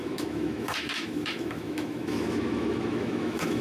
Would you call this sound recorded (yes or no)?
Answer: no